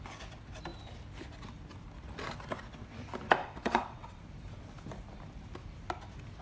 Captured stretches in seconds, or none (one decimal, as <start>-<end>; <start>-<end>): 0.0-3.4; 4.2-6.4